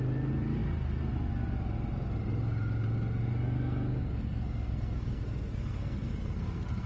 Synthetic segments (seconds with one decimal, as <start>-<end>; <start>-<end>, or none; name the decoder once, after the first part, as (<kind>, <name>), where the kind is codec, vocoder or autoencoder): 3.3-6.9 (codec, SNAC)